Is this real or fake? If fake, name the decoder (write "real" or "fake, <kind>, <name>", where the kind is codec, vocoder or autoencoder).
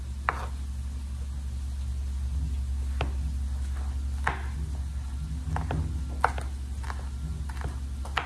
real